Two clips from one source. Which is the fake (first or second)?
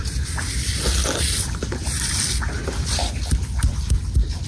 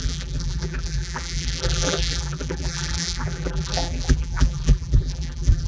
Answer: second